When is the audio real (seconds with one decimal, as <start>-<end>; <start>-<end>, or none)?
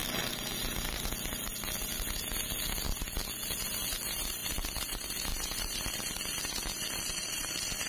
0.0-4.4; 6.0-7.2